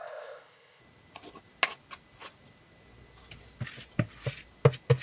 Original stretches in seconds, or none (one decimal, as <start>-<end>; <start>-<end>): 0.8-5.0